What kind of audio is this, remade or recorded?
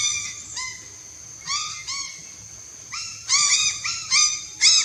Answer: recorded